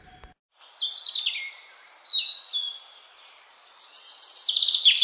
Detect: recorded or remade recorded